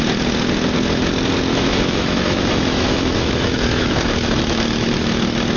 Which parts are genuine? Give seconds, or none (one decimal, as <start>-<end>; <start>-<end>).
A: 0.0-1.5; 4.9-5.6